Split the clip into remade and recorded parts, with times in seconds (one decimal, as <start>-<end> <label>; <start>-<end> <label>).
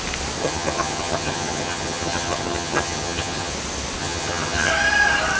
0.0-0.4 recorded; 0.4-3.5 remade; 3.5-4.0 recorded; 4.0-4.7 remade; 4.7-5.4 recorded